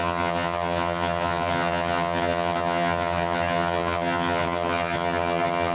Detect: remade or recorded remade